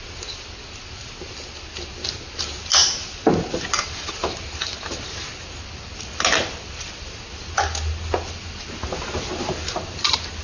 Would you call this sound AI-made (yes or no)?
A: no